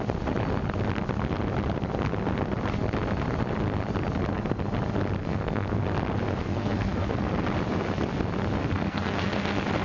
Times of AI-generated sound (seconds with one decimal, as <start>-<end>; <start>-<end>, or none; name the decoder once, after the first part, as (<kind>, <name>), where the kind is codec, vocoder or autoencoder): 5.2-5.8 (codec, SNAC); 6.4-7.3; 8.6-9.3